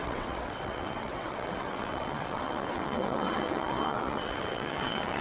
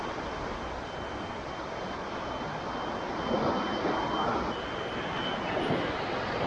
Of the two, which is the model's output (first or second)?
first